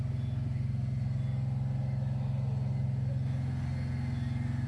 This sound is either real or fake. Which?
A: real